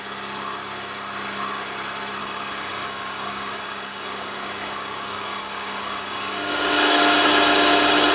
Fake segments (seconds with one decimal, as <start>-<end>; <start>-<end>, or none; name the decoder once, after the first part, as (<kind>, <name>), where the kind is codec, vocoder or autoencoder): 2.2-7.0 (codec, DAC)